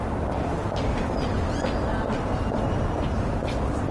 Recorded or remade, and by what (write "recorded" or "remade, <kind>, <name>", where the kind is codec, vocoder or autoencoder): recorded